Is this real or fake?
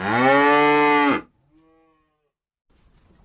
real